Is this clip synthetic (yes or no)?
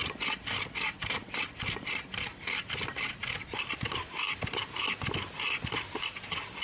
no